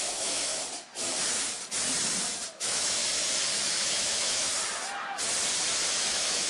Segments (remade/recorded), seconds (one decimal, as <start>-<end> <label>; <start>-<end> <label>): 0.0-0.5 remade; 0.5-2.6 recorded; 2.6-3.0 remade; 3.0-3.6 recorded; 3.6-4.5 remade; 4.5-6.0 recorded; 6.0-6.5 remade